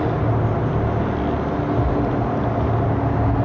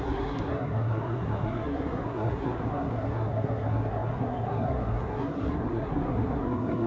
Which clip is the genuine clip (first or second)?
first